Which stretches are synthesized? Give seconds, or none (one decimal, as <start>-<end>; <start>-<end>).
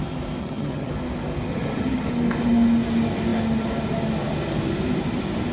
0.4-0.9; 1.5-2.1